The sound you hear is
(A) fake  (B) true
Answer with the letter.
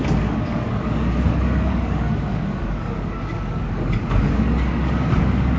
A